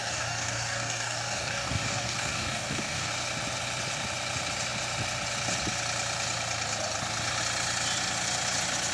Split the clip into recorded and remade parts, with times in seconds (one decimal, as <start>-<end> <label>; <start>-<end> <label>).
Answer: 0.0-3.1 remade; 3.1-8.9 recorded